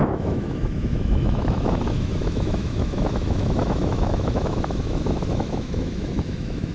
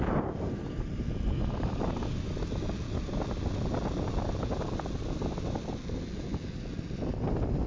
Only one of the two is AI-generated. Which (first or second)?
first